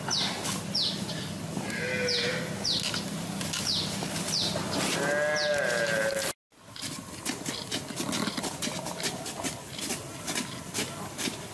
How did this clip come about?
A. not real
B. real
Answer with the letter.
B